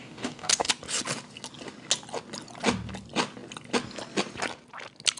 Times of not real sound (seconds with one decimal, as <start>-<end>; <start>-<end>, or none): 0.0-0.7